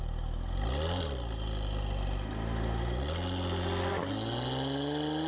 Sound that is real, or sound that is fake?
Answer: real